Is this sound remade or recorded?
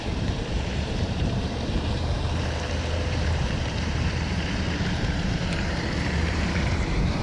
remade